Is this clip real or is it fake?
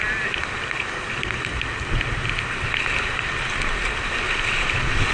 real